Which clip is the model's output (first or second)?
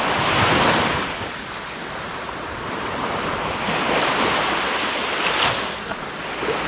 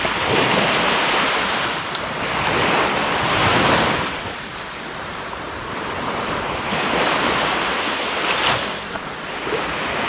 second